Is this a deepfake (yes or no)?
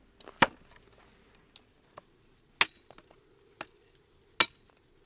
no